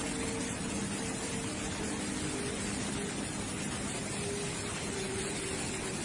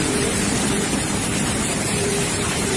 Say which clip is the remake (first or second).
second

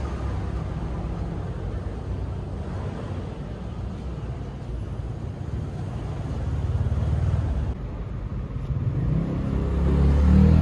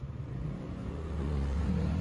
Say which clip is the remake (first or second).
second